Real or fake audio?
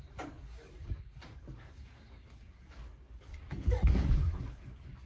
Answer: fake